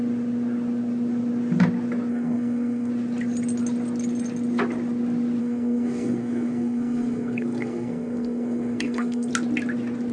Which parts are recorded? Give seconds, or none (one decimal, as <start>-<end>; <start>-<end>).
0.0-2.1; 2.9-5.4; 9.3-10.1